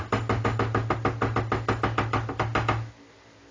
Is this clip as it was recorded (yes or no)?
yes